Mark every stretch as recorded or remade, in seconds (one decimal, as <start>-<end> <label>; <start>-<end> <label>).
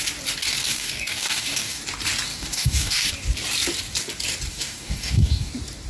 0.0-0.6 recorded; 0.6-1.8 remade; 1.8-2.3 recorded; 2.3-3.1 remade; 3.1-4.5 recorded; 4.5-5.5 remade; 5.5-5.9 recorded